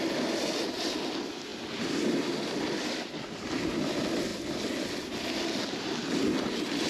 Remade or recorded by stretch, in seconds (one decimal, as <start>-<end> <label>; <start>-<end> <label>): 0.0-6.9 recorded